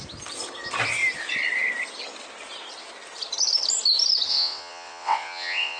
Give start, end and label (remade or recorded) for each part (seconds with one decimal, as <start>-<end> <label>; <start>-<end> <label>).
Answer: 0.0-4.3 recorded; 4.3-5.8 remade